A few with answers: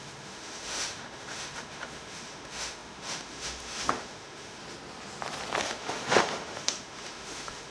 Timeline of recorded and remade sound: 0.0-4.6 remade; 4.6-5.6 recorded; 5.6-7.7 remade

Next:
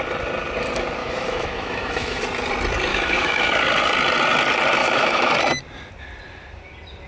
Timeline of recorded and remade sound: 0.0-1.0 recorded; 1.0-2.2 remade; 2.2-2.9 recorded; 2.9-3.5 remade; 3.5-4.8 recorded; 4.8-5.3 remade; 5.3-7.1 recorded

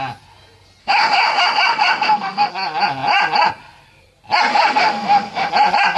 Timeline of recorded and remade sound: 0.0-0.8 recorded; 0.8-2.5 remade; 2.5-4.5 recorded; 4.5-5.5 remade; 5.5-6.0 recorded

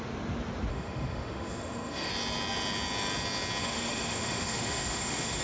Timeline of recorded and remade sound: 0.0-0.7 recorded; 0.7-2.1 remade; 2.1-3.6 recorded; 3.6-5.4 remade